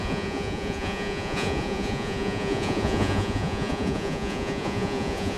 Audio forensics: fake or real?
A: fake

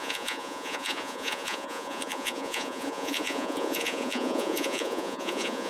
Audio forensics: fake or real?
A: fake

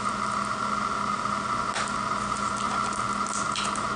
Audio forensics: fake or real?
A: real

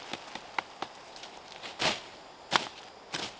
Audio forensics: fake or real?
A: real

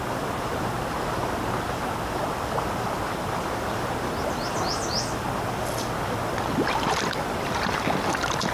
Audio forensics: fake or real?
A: real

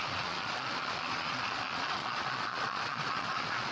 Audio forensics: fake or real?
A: fake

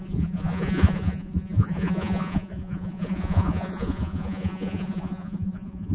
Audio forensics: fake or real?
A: fake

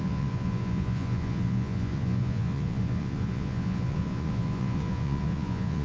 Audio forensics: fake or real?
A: fake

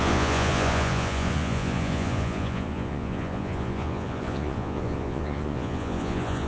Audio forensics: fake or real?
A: fake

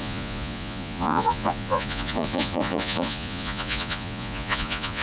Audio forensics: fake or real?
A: fake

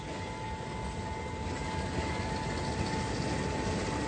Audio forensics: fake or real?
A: real